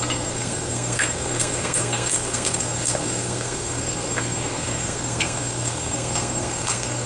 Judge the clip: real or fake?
fake